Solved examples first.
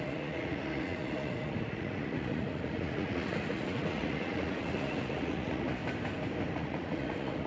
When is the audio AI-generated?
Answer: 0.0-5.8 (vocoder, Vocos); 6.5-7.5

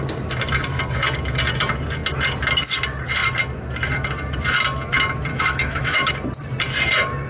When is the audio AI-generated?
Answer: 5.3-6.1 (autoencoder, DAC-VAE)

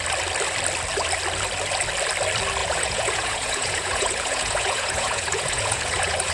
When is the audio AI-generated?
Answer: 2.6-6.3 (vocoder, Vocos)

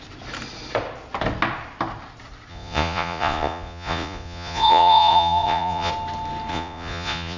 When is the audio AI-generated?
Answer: 2.5-5.9 (vocoder, Vocos); 6.5-7.4